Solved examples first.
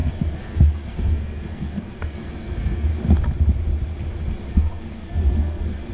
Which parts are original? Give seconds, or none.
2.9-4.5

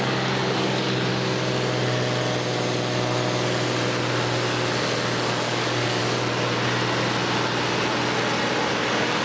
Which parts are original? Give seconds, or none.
1.1-5.3; 6.0-8.7

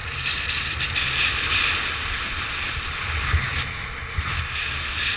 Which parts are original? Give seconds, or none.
3.1-5.2

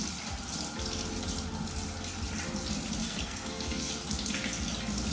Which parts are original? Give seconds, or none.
0.0-3.0; 3.9-5.1